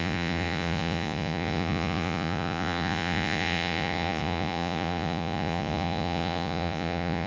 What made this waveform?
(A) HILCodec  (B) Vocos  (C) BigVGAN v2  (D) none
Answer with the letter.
B